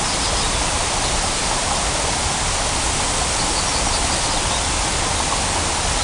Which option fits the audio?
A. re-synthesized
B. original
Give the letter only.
B